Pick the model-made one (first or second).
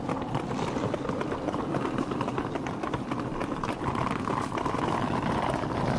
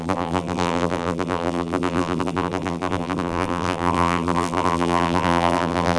second